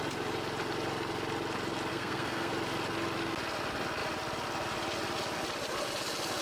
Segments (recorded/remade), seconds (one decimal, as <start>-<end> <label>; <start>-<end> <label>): 0.0-1.9 recorded; 1.9-2.5 remade; 2.5-6.4 recorded